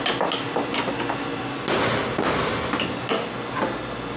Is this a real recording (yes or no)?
yes